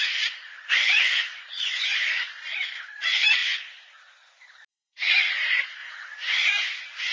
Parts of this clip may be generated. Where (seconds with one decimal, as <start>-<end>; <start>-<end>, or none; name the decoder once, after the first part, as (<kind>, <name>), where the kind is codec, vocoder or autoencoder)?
0.0-3.4 (vocoder, BigVGAN v2); 5.3-7.1